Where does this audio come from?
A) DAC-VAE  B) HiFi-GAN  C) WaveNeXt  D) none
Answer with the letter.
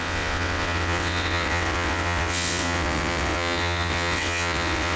C